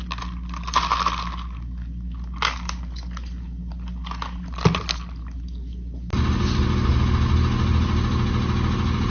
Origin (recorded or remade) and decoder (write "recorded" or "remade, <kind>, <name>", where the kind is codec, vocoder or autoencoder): recorded